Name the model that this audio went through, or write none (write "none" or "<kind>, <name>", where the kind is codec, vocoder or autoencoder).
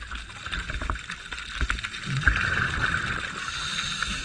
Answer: none